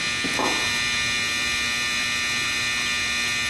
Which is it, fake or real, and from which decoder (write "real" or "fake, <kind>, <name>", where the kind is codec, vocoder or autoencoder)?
real